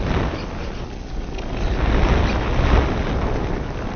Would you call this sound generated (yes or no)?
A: no